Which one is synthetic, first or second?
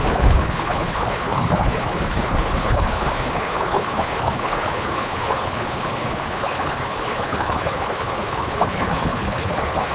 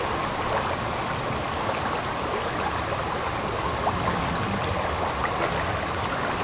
first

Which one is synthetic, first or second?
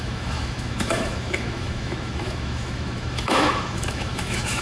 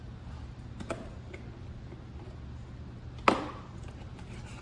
first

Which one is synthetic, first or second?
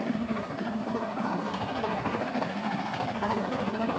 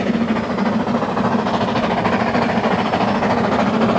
first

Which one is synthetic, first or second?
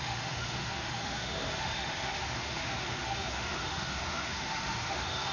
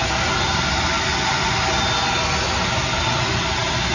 first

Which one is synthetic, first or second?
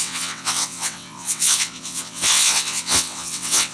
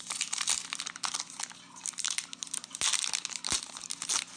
first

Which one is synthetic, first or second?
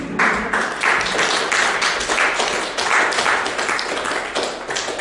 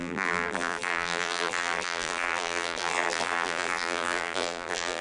second